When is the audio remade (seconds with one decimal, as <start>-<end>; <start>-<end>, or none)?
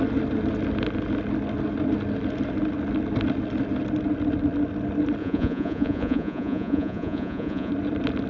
5.2-7.7